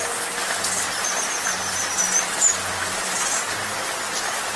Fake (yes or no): no